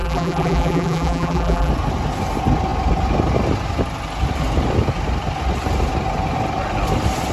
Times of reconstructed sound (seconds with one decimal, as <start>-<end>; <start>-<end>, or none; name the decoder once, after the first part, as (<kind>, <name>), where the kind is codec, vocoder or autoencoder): 0.0-1.7 (vocoder, BigVGAN v2)